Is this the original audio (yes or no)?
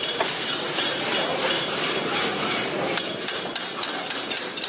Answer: no